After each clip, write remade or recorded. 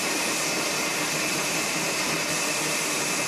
remade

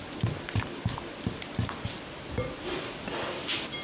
recorded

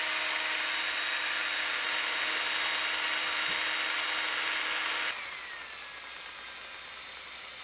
recorded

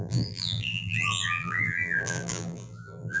remade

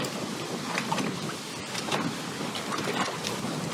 recorded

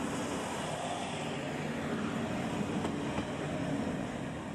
recorded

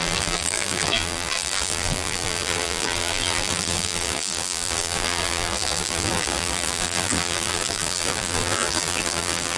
remade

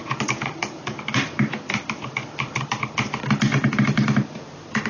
remade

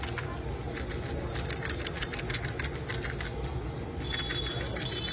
recorded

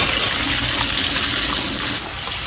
recorded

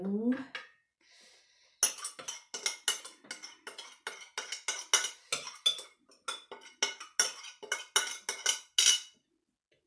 recorded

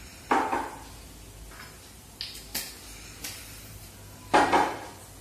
recorded